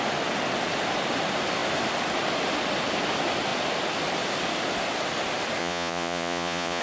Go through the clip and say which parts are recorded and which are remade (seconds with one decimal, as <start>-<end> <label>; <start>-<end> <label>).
0.0-5.6 recorded; 5.6-6.8 remade